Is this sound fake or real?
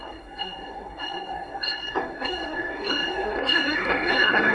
fake